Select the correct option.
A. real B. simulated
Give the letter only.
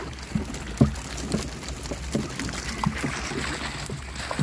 A